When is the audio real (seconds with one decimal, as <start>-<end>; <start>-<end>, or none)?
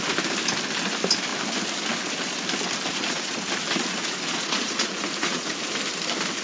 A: 0.0-2.9; 3.4-4.0; 5.5-6.4